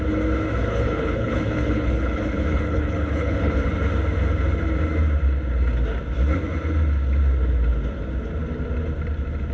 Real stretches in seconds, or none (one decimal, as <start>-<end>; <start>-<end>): 0.0-0.6; 3.7-9.5